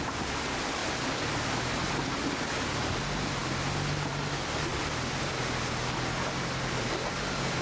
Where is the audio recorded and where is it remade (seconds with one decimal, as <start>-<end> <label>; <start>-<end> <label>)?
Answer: 0.0-7.6 recorded